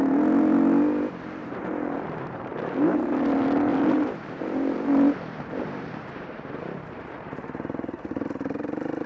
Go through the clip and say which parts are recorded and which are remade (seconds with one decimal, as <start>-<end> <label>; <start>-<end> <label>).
0.0-1.4 recorded; 1.4-3.1 remade; 3.1-3.7 recorded; 3.7-9.1 remade